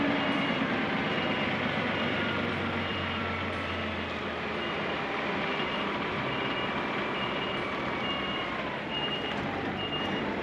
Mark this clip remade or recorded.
remade